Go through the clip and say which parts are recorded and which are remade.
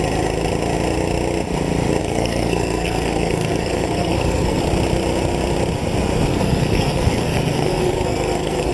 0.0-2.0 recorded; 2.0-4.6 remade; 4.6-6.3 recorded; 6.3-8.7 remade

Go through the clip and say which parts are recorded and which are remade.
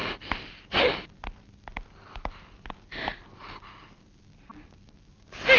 0.0-5.6 recorded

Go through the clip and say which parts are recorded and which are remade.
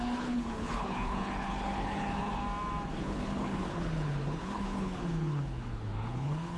0.0-2.4 remade; 2.4-2.9 recorded; 2.9-6.6 remade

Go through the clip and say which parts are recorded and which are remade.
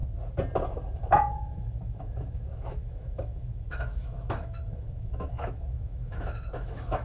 0.0-1.0 recorded; 1.0-7.0 remade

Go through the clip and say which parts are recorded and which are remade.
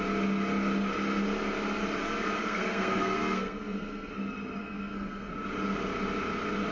0.0-2.4 recorded; 2.4-4.1 remade; 4.1-4.6 recorded; 4.6-5.3 remade; 5.3-6.7 recorded